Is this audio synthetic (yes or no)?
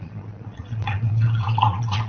yes